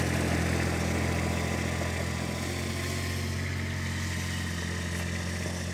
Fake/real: real